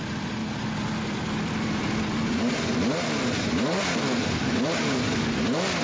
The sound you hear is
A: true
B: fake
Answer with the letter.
A